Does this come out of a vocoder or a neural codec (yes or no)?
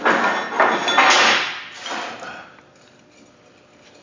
no